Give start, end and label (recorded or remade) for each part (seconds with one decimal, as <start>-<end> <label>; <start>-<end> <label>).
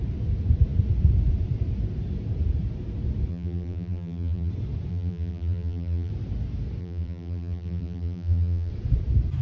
0.0-3.3 recorded; 3.3-4.5 remade; 4.5-4.9 recorded; 4.9-6.1 remade; 6.1-6.8 recorded; 6.8-8.7 remade; 8.7-9.4 recorded